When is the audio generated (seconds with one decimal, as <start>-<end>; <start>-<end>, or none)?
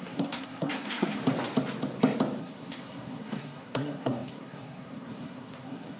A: 0.0-1.2; 2.4-6.0